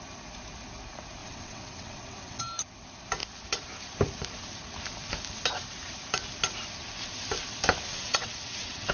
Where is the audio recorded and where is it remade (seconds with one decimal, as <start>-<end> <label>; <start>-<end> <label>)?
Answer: 0.0-1.2 recorded; 1.2-2.4 remade; 2.4-7.9 recorded; 7.9-8.9 remade